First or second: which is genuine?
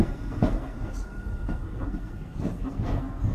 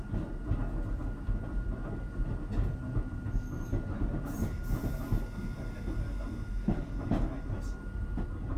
second